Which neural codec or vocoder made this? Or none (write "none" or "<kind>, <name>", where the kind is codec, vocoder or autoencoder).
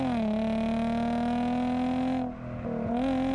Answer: none